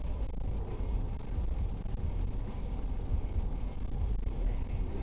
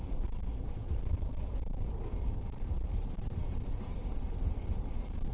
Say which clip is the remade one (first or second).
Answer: second